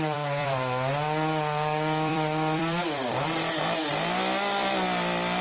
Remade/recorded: remade